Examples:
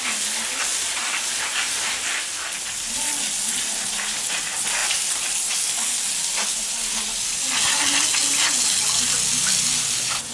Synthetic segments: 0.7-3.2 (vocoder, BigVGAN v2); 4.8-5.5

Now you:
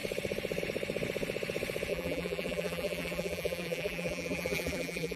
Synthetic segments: 1.9-5.2 (vocoder, BigVGAN v2)

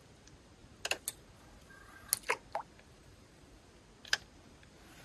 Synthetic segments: 3.0-3.5 (vocoder, BigVGAN v2)